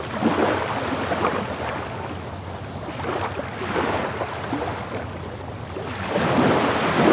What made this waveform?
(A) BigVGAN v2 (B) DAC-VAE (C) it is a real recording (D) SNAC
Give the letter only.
C